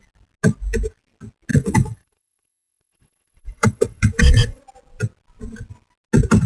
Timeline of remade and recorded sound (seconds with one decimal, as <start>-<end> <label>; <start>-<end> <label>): 0.0-1.5 recorded; 1.5-4.6 remade; 4.6-6.5 recorded